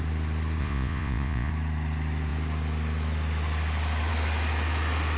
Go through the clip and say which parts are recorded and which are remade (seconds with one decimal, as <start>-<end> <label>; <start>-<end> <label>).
0.0-0.6 recorded; 0.6-1.5 remade; 1.5-5.2 recorded